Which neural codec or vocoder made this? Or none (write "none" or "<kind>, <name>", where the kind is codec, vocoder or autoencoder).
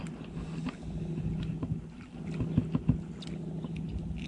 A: none